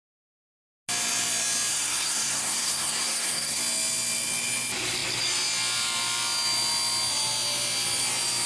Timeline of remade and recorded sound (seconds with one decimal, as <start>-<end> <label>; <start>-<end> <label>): 0.0-1.7 recorded; 1.7-3.6 remade; 3.6-8.5 recorded